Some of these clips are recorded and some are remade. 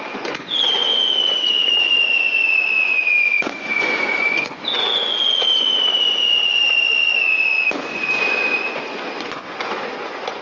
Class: remade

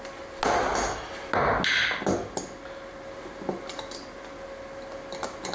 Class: recorded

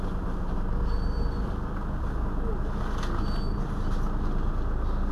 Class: recorded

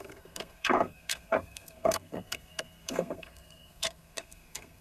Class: remade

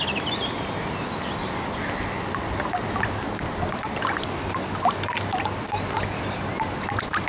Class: recorded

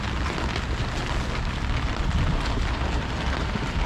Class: recorded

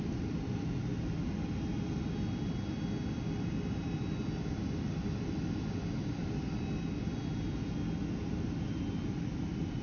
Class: recorded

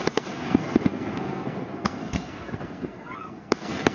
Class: remade